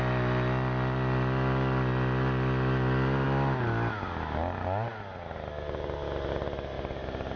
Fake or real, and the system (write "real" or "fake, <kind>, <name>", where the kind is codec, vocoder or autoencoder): real